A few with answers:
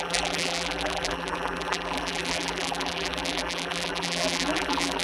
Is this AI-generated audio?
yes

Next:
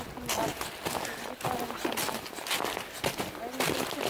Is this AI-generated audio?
no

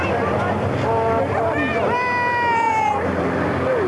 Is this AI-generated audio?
no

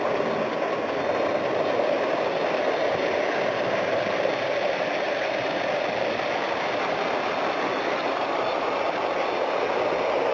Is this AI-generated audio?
no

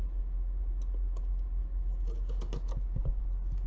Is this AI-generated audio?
no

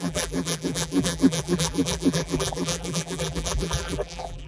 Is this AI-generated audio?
yes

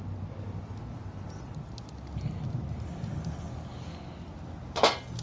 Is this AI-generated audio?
no